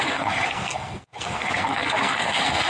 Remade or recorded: remade